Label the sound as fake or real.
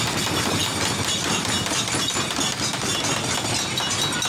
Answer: real